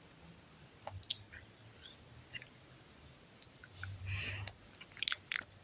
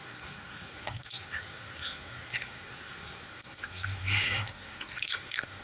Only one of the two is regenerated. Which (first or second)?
second